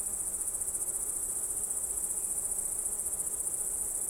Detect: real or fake real